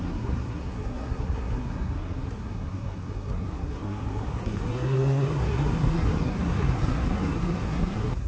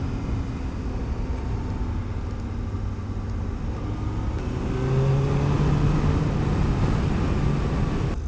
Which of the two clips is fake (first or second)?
first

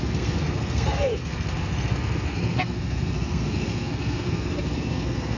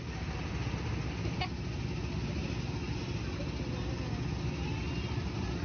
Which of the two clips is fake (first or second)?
first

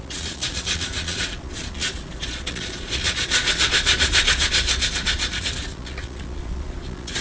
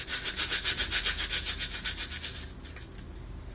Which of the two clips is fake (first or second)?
first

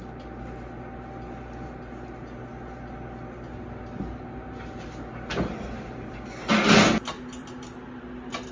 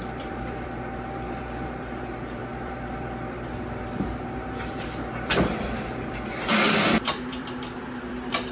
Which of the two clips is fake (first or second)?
second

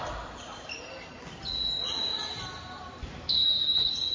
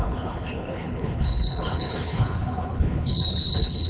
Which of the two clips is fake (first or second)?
second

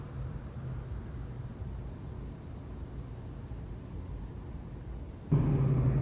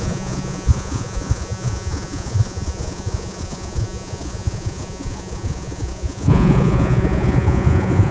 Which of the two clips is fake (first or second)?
second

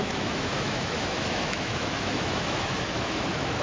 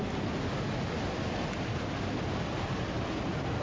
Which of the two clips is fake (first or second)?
first